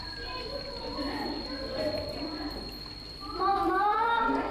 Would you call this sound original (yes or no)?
no